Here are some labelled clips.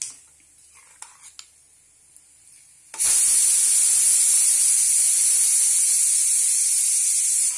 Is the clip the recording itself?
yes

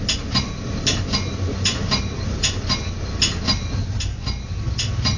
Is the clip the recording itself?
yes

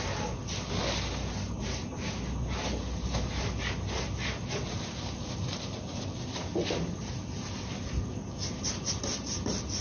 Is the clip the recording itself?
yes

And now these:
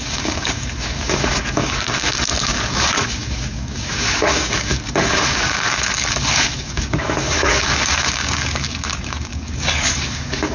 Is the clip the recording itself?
no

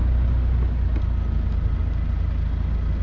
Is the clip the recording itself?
yes